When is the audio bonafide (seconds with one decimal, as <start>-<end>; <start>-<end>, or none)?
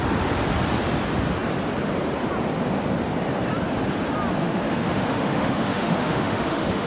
0.0-4.4